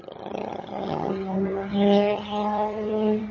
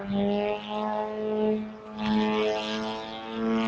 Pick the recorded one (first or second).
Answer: second